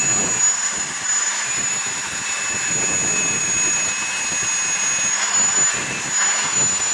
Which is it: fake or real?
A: real